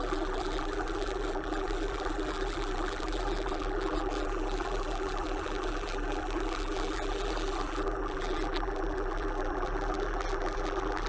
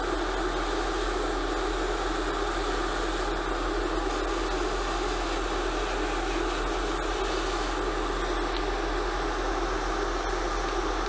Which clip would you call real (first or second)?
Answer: second